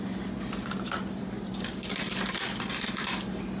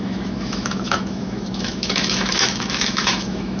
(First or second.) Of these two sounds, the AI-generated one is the second